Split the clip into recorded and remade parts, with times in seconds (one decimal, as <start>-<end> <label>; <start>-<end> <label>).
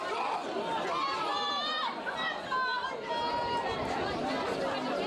0.0-5.1 recorded